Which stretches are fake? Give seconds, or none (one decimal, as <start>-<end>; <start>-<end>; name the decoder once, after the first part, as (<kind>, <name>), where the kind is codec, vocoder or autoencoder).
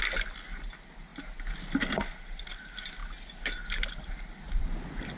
none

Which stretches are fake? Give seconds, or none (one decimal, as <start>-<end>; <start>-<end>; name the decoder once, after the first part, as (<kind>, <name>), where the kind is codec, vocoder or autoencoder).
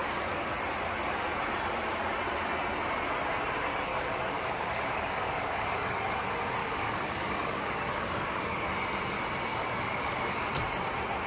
0.0-0.5 (codec, DAC); 3.9-6.1; 6.6-8.7; 9.5-10.5